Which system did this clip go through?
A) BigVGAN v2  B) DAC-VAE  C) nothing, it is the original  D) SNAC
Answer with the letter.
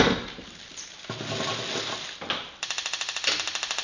C